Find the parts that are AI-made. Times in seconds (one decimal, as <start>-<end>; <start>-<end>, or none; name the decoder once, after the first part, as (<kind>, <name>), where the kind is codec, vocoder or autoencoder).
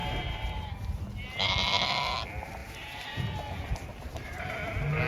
0.0-1.0 (vocoder, BigVGAN v2); 2.6-3.2; 3.9-4.5